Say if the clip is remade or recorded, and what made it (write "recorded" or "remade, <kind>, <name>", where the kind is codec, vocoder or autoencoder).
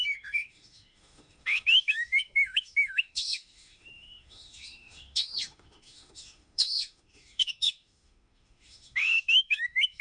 remade, autoencoder, DAC-VAE